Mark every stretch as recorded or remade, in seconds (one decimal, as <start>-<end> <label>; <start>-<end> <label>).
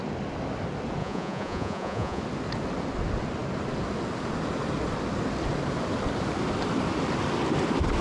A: 0.0-1.0 recorded; 1.0-2.2 remade; 2.2-8.0 recorded